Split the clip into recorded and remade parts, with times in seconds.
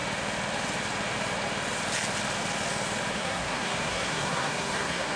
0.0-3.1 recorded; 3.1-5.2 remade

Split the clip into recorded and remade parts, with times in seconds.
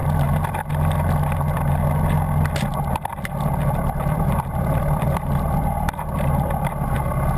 0.0-3.1 recorded; 3.1-6.7 remade; 6.7-7.4 recorded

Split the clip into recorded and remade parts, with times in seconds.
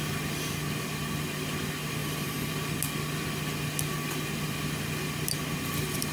0.0-2.0 recorded; 2.0-2.5 remade; 2.5-6.1 recorded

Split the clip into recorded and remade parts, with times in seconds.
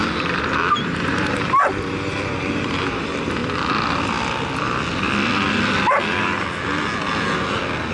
0.0-0.7 recorded; 0.7-3.4 remade; 3.4-7.9 recorded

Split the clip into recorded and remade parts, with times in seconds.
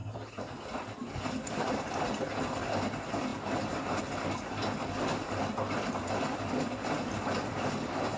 0.0-8.2 recorded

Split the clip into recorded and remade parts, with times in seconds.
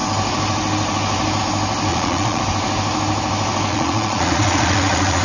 0.0-1.9 recorded; 1.9-2.4 remade; 2.4-3.7 recorded; 3.7-5.2 remade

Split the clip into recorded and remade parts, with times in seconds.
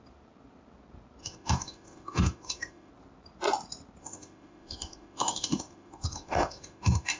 0.0-1.2 recorded; 1.2-2.9 remade; 2.9-4.0 recorded; 4.0-7.2 remade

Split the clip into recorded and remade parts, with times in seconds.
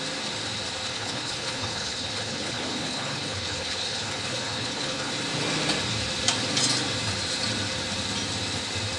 0.0-0.9 recorded; 0.9-5.1 remade; 5.1-9.0 recorded